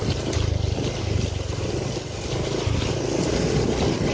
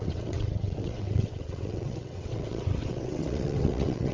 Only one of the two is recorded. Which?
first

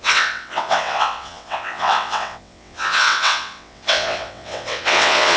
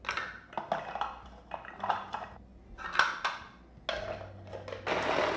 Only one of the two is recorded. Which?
second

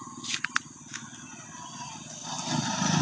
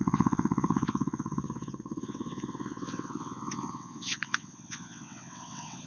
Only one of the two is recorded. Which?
first